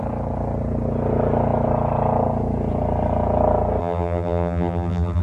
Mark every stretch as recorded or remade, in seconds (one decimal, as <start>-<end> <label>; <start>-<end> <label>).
0.0-3.8 recorded; 3.8-5.2 remade